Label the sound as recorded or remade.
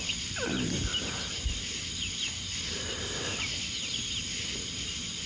recorded